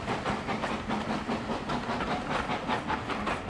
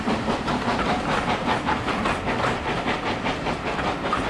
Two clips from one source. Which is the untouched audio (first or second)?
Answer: first